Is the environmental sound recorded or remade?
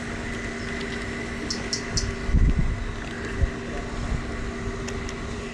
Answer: recorded